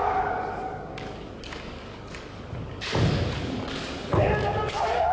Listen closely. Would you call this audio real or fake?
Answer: fake